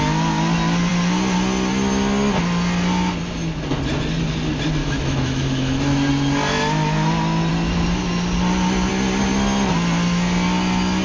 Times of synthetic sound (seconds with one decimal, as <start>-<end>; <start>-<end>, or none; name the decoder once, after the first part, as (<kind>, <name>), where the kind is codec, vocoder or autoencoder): 4.8-6.1 (autoencoder, DAC-VAE)